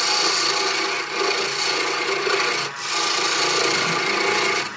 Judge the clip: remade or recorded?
recorded